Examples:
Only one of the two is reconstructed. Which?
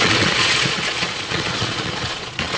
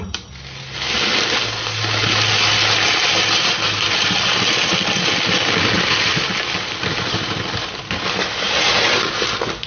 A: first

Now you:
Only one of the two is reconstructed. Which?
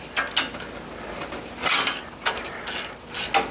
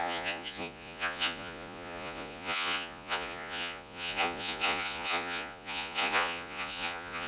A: second